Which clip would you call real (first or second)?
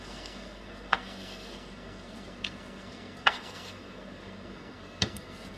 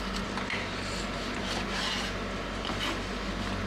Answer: second